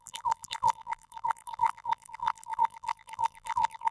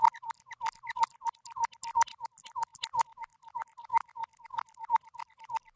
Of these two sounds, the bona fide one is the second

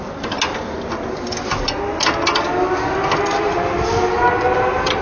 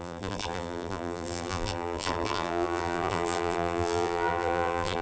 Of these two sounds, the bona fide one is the first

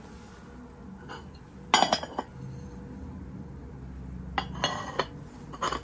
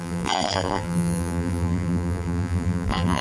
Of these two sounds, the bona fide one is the first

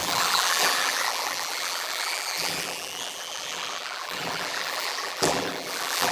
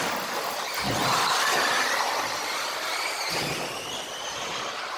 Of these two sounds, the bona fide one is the second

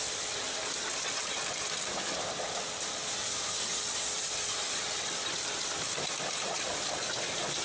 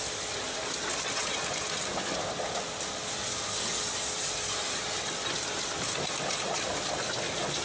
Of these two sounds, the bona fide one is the second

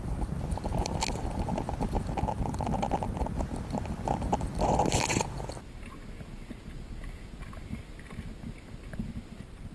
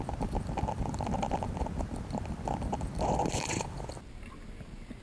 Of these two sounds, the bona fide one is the first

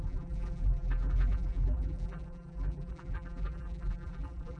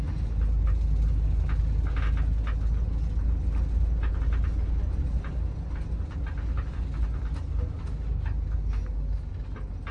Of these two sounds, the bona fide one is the second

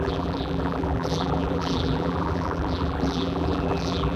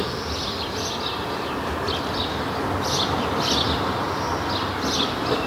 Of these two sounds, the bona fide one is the second